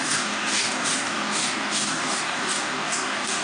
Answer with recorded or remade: remade